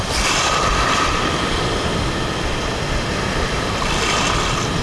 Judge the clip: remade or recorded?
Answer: recorded